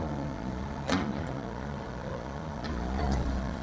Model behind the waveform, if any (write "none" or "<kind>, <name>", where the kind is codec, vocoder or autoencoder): vocoder, Vocos